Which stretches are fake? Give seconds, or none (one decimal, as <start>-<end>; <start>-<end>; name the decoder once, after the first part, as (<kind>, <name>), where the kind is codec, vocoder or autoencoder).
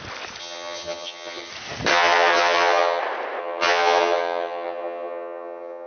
0.4-1.5 (vocoder, HiFi-GAN); 1.9-3.0; 3.4-5.9